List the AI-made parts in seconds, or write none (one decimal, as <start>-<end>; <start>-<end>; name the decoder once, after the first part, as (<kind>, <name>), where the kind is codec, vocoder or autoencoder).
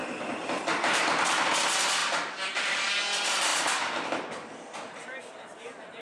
0.0-1.5 (vocoder, BigVGAN v2); 2.0-2.9